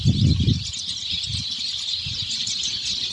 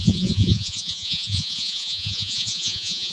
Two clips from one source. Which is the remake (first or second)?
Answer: second